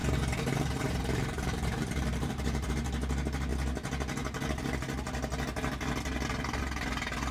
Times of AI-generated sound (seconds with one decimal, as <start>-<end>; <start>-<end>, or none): 0.0-2.7